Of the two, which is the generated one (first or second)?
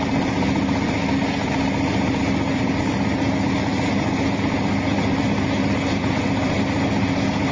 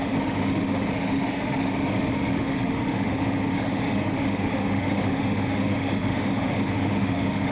second